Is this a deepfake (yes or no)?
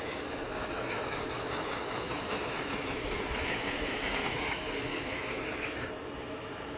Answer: yes